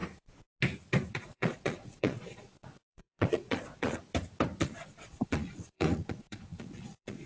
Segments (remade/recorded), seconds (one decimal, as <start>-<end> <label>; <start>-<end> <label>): 0.0-1.1 recorded; 1.1-4.0 remade; 4.0-4.6 recorded; 4.6-7.3 remade